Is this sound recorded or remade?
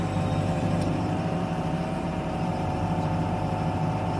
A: remade